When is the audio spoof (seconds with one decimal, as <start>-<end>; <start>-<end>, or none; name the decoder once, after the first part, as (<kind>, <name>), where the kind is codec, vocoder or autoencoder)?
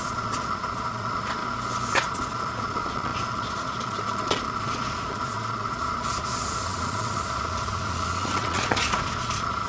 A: 0.0-1.4 (vocoder, Vocos); 1.9-9.7